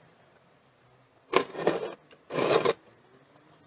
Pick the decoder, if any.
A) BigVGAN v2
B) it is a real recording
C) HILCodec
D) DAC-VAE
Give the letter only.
B